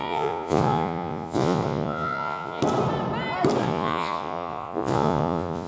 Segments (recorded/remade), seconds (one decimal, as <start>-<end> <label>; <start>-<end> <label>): 0.0-2.6 remade; 2.6-3.6 recorded; 3.6-5.7 remade

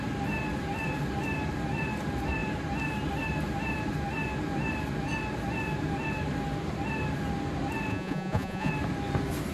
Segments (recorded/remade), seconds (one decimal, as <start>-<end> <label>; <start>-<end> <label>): 0.0-7.9 recorded; 7.9-8.7 remade; 8.7-9.5 recorded

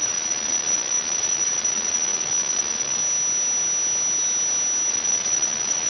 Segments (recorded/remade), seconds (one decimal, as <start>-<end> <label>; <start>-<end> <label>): 0.0-3.0 remade; 3.0-4.9 recorded; 4.9-5.9 remade

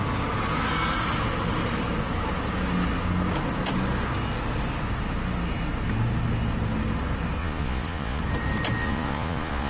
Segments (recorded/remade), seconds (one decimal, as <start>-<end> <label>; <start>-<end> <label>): 0.0-7.4 recorded; 7.4-8.2 remade; 8.2-8.8 recorded; 8.8-9.7 remade

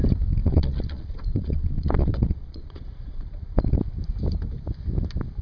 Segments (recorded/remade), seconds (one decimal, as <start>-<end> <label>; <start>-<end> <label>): 0.0-0.4 recorded; 0.4-3.6 remade; 3.6-5.4 recorded